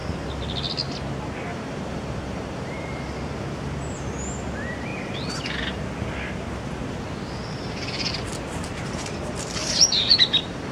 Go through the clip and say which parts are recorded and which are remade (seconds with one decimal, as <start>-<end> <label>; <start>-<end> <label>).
0.0-1.5 recorded; 1.5-2.7 remade; 2.7-9.6 recorded; 9.6-10.7 remade